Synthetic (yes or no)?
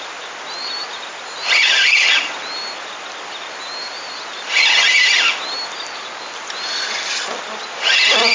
no